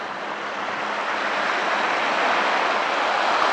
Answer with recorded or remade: recorded